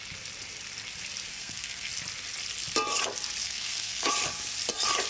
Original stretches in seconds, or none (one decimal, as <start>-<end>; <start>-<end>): 0.0-1.3; 1.9-3.4; 4.1-5.1